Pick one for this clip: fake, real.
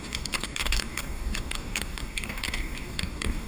fake